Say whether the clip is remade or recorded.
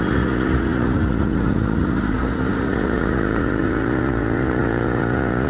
remade